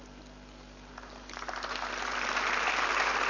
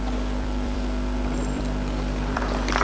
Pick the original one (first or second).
first